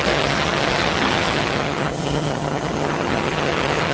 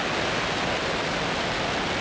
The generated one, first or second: first